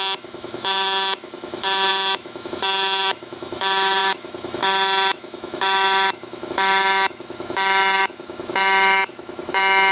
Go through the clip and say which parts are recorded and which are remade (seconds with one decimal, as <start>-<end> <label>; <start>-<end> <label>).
0.0-9.9 remade